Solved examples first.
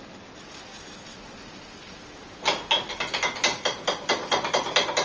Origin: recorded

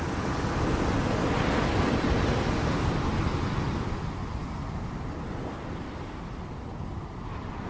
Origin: recorded